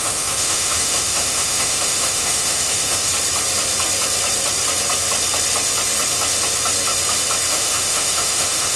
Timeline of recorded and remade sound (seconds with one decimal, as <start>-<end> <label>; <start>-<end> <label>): 0.0-3.1 remade; 3.1-7.5 recorded; 7.5-8.8 remade